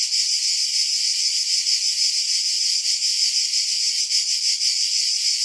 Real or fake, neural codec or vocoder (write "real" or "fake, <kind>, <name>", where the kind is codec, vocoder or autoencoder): real